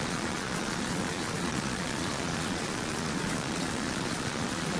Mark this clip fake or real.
fake